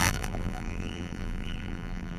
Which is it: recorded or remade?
remade